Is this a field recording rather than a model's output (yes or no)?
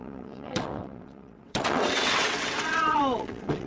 no